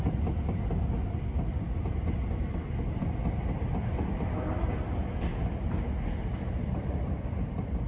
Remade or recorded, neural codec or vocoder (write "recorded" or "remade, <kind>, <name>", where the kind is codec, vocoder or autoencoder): recorded